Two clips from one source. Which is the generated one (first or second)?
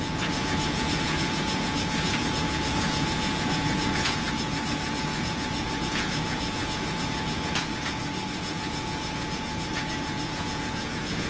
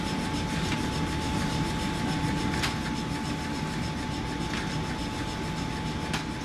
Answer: first